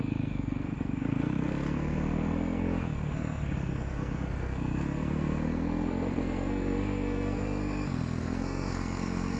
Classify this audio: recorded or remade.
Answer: remade